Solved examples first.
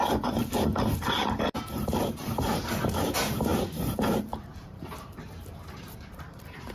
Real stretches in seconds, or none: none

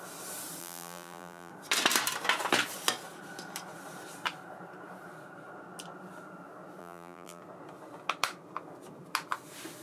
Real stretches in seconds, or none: 0.0-0.6; 1.5-6.8; 7.4-9.8

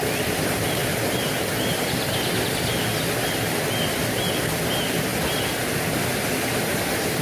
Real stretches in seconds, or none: 0.0-7.2